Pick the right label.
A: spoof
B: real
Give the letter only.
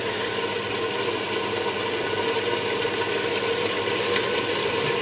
B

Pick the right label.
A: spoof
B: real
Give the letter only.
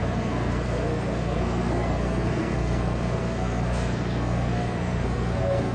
A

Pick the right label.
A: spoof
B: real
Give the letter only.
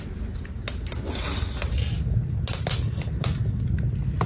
B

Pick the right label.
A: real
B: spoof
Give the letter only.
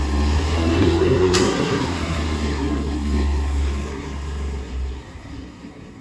B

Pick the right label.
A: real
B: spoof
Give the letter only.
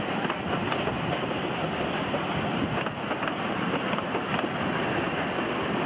A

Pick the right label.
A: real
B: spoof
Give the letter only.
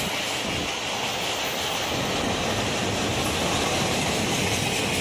A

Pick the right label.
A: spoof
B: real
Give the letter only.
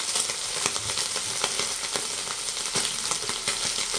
B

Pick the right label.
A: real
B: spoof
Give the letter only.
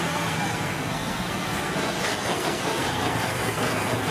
B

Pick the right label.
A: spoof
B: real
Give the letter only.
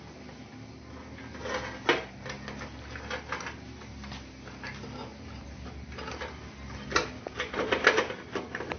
B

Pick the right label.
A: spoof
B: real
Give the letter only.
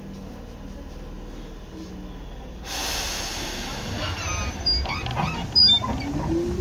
B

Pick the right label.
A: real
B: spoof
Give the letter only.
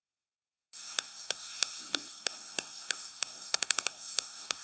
B